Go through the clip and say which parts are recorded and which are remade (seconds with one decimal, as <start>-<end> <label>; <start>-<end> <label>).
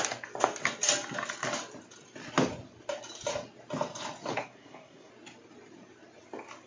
0.0-4.3 recorded; 4.3-5.1 remade; 5.1-6.7 recorded